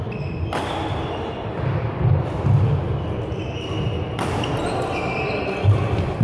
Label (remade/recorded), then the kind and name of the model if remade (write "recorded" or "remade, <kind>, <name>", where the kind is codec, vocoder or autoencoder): recorded